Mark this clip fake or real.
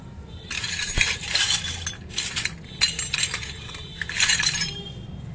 real